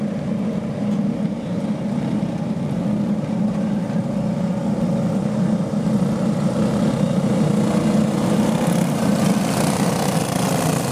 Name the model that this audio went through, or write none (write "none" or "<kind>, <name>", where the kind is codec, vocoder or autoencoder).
none